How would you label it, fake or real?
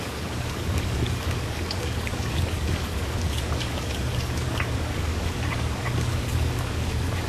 fake